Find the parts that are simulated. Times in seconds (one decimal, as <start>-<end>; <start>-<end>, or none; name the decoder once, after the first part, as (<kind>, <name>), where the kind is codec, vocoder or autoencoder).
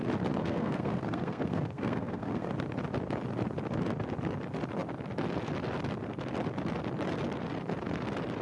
0.4-2.5 (codec, SNAC)